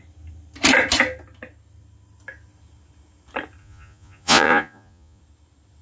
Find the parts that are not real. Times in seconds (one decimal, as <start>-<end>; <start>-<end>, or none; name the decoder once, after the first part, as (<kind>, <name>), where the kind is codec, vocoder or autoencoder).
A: 3.6-5.2 (vocoder, Vocos)